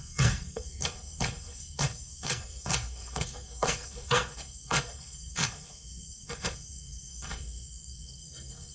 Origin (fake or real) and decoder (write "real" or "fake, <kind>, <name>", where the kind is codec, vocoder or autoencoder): fake, codec, SNAC